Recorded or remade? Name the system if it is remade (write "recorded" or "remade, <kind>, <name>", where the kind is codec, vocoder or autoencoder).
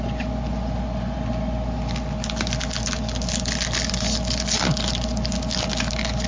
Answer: recorded